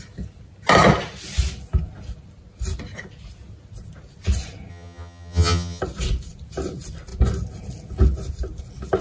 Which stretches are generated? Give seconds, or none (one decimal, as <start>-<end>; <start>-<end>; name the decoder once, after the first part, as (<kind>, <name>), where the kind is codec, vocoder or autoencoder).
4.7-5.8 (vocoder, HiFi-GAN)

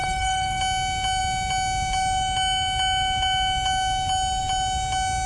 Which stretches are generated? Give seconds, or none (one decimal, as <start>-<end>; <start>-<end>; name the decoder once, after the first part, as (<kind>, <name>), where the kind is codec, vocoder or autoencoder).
0.0-0.6 (codec, SNAC)

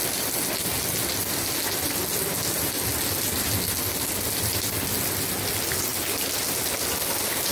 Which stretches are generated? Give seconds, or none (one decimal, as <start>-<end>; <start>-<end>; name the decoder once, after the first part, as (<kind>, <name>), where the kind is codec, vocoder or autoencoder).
none

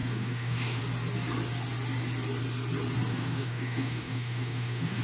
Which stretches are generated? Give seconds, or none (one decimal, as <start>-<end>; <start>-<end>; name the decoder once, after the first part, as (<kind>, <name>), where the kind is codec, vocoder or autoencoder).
0.0-0.8 (autoencoder, DAC-VAE); 3.1-5.0